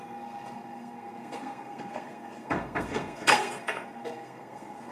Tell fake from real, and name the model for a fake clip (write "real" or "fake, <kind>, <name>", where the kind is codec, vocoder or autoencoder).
fake, codec, SNAC